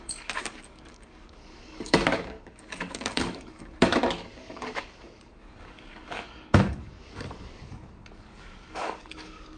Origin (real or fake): fake